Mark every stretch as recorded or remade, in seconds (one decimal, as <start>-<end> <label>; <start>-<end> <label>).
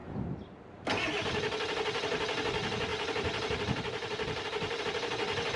0.0-0.8 remade; 0.8-2.9 recorded; 2.9-4.8 remade; 4.8-5.6 recorded